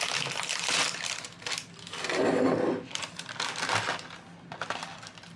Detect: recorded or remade recorded